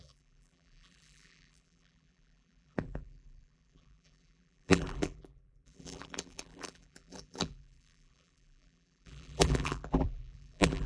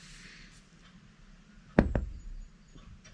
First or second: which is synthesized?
first